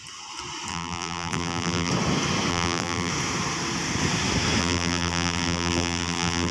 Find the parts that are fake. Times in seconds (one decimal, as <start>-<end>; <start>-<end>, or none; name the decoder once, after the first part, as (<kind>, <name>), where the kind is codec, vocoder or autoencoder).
0.7-1.9 (vocoder, BigVGAN v2); 2.5-3.1; 4.6-6.5